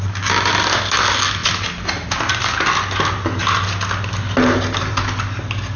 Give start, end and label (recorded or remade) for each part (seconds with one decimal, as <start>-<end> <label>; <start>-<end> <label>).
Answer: 0.0-5.8 recorded